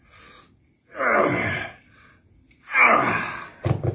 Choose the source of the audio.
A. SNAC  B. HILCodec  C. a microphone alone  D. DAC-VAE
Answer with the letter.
C